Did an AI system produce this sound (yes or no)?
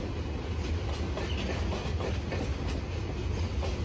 no